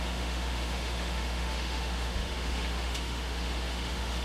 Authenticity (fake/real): fake